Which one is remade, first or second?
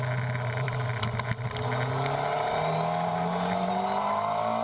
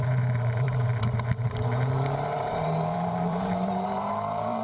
second